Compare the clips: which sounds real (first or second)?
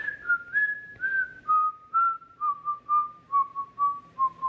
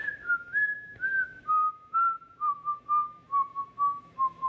first